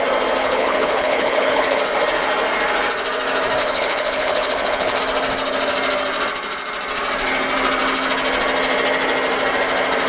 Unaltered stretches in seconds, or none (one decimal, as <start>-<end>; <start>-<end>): 0.0-0.4; 1.8-3.6; 5.0-10.1